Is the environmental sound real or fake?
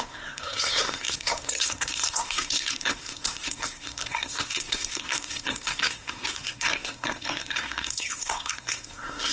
fake